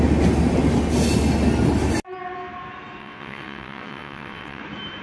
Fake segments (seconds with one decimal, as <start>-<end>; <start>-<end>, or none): 3.0-4.6